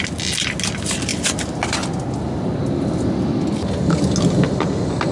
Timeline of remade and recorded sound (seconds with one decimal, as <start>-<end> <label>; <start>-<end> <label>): 0.0-5.1 recorded